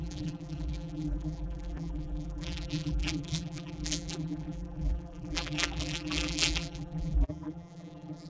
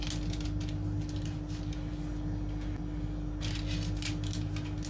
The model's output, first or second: first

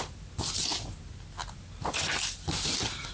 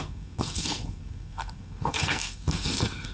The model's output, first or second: second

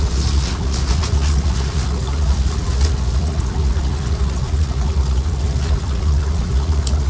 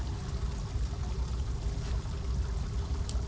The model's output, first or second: first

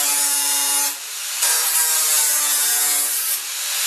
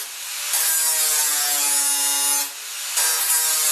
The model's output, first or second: first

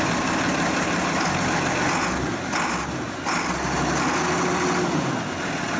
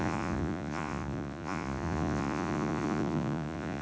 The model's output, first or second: second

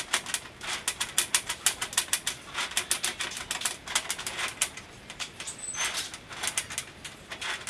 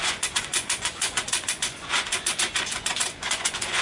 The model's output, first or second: second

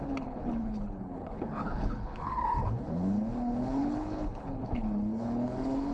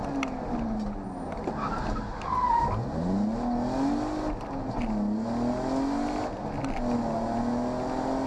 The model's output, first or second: first